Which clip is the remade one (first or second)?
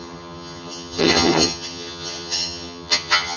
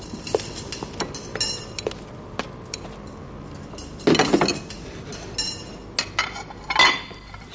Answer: first